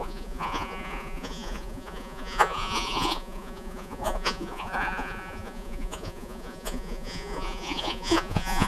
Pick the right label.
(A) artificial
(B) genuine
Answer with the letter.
A